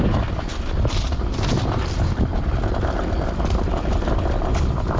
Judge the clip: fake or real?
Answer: real